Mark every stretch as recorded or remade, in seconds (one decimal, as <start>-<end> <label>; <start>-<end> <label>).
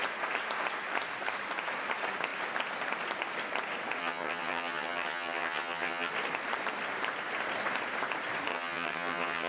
0.0-4.0 recorded; 4.0-6.1 remade; 6.1-8.5 recorded; 8.5-9.5 remade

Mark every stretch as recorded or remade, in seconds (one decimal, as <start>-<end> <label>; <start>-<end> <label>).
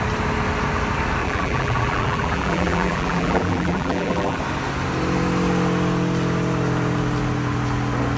0.0-1.2 recorded; 1.2-4.4 remade; 4.4-8.2 recorded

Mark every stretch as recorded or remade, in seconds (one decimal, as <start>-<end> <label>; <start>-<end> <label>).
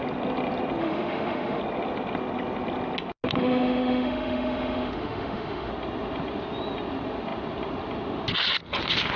0.0-0.8 recorded; 0.8-1.6 remade; 1.6-3.4 recorded; 3.4-5.7 remade; 5.7-9.2 recorded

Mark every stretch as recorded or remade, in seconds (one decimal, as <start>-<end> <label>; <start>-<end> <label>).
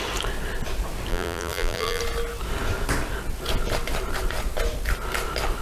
0.0-1.1 recorded; 1.1-2.0 remade; 2.0-5.6 recorded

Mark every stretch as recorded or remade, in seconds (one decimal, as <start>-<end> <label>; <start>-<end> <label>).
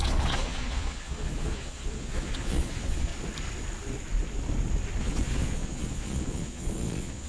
0.0-3.1 remade; 3.1-5.0 recorded; 5.0-7.3 remade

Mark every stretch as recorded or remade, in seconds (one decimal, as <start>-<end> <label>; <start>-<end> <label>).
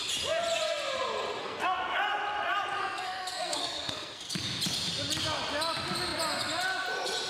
0.0-1.4 recorded; 1.4-2.0 remade; 2.0-2.8 recorded; 2.8-4.3 remade; 4.3-7.3 recorded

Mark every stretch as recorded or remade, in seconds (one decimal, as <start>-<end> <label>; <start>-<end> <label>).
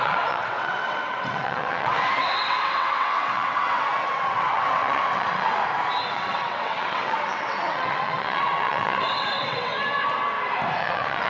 0.0-5.6 remade; 5.6-6.1 recorded; 6.1-9.7 remade; 9.7-10.8 recorded; 10.8-11.3 remade